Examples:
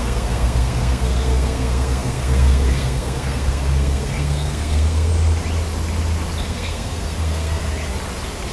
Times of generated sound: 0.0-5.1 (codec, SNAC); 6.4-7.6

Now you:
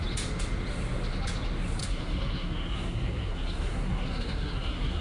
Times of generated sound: 1.8-5.0 (codec, SNAC)

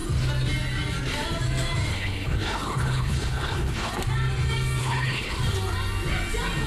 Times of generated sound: 1.9-3.9 (codec, HILCodec); 4.8-5.4

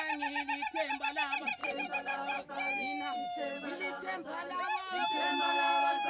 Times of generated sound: 1.6-2.5 (autoencoder, DAC-VAE); 3.7-4.6